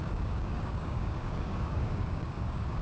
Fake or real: fake